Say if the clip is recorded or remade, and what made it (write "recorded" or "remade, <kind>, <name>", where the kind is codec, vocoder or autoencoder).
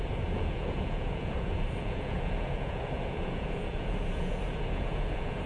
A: remade, vocoder, Vocos